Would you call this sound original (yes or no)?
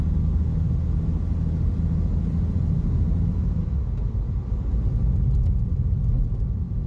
yes